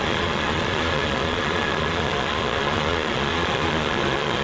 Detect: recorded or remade remade